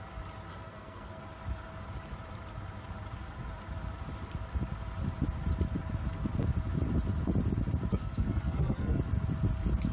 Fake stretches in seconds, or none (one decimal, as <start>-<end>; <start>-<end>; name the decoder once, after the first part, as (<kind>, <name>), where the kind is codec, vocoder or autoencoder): 0.5-1.2 (codec, SNAC); 7.9-9.0